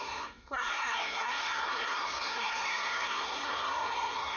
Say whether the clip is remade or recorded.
remade